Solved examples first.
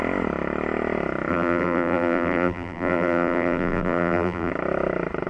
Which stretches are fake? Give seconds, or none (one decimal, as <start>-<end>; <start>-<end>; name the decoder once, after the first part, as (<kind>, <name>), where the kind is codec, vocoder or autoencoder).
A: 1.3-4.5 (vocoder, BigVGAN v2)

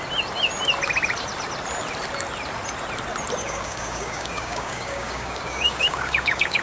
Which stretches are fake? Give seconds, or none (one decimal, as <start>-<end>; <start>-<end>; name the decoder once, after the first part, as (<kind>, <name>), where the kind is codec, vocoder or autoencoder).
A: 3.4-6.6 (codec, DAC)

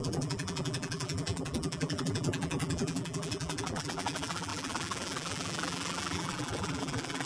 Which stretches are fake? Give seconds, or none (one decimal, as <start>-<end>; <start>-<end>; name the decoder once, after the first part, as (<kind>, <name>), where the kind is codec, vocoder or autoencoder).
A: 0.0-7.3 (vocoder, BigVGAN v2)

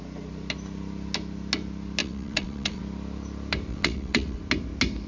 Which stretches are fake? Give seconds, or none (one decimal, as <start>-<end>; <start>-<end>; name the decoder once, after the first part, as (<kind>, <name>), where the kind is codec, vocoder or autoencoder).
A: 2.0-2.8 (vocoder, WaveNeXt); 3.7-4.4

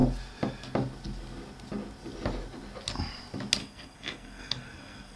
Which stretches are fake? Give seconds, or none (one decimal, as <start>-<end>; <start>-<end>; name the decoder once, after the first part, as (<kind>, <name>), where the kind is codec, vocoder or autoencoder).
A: 3.6-5.2 (codec, SNAC)